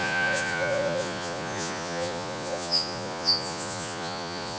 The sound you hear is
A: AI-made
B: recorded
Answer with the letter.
A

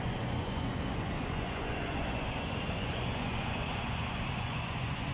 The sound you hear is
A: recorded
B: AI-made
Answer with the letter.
B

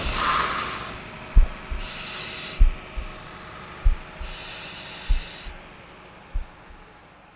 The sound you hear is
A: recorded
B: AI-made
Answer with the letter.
A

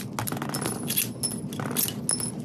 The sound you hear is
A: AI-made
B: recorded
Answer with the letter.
B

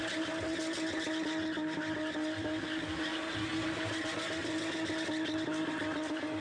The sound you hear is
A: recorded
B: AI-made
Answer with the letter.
A